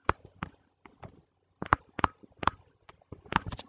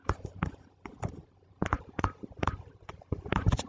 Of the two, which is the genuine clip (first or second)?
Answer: first